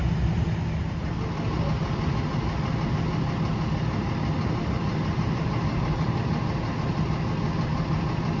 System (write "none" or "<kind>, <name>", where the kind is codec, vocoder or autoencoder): none